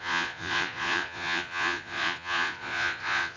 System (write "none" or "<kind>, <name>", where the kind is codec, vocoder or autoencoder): vocoder, Vocos